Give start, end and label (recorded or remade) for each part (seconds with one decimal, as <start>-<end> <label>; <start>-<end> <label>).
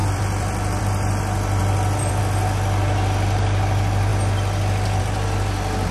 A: 0.0-0.8 remade; 0.8-1.6 recorded; 1.6-2.2 remade; 2.2-5.9 recorded